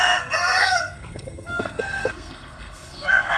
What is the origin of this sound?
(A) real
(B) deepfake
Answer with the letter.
B